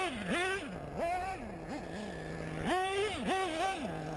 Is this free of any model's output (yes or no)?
yes